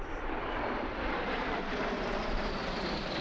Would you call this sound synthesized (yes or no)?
yes